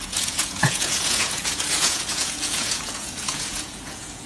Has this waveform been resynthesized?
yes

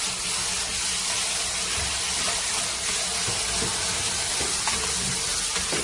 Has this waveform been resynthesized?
no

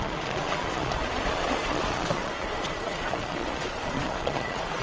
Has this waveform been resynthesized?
yes